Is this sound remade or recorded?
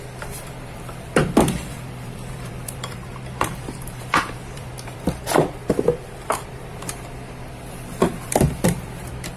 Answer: remade